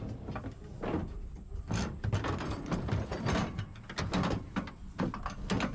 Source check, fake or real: real